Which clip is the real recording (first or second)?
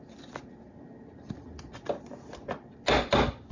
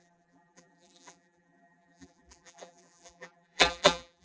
first